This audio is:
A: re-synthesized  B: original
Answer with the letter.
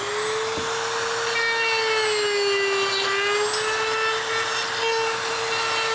B